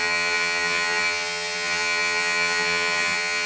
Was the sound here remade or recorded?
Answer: remade